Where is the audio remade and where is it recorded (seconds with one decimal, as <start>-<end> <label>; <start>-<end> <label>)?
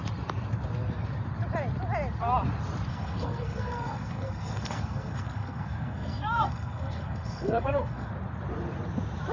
0.0-2.9 recorded; 2.9-8.1 remade; 8.1-9.3 recorded